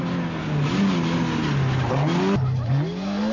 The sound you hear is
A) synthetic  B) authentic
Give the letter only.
B